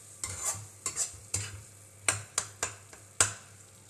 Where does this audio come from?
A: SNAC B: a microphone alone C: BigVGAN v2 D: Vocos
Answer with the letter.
B